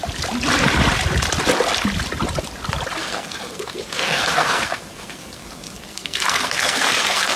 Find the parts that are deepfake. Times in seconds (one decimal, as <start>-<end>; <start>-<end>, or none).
3.0-7.4

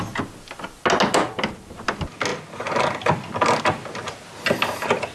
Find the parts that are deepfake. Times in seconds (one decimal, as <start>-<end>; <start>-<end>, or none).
none

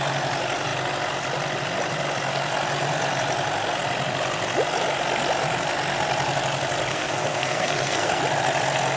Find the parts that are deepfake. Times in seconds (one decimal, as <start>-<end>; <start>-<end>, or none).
6.9-8.2

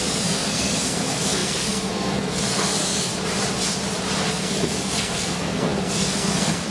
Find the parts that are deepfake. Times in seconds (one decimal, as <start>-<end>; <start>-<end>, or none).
0.0-3.1; 4.3-6.7

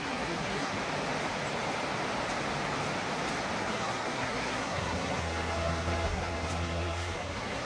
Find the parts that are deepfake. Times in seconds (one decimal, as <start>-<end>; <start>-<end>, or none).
0.0-0.7; 3.6-7.7

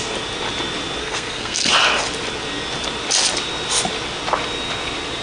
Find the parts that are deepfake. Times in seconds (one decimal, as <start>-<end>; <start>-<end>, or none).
1.0-1.7